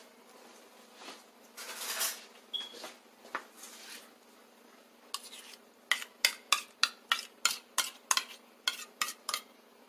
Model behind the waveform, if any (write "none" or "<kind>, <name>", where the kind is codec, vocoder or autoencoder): none